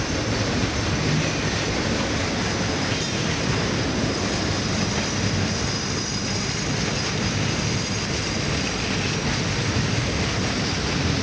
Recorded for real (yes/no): yes